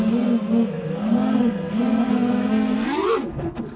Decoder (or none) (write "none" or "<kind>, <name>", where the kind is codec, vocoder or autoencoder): codec, SNAC